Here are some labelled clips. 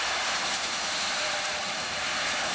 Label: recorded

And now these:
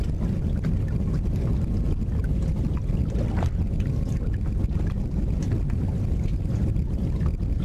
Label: recorded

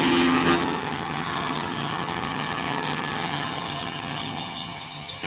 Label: remade